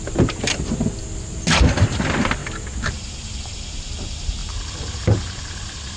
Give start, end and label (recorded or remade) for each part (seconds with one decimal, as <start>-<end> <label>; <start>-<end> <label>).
0.0-6.0 recorded